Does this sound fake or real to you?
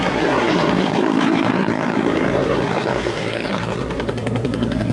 fake